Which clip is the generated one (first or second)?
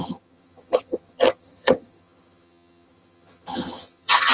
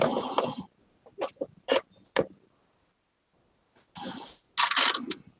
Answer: first